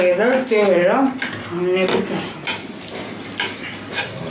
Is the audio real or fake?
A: real